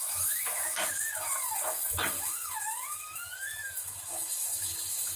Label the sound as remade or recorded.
remade